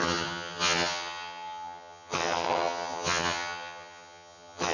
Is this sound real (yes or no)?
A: no